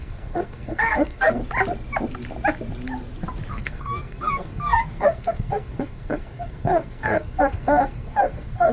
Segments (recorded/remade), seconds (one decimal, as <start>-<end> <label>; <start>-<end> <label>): 0.0-1.4 remade; 1.4-3.5 recorded; 3.5-8.7 remade